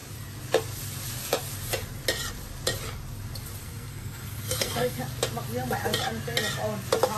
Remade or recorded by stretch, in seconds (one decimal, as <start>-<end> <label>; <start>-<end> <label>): 0.0-3.6 recorded; 3.6-5.0 remade; 5.0-7.2 recorded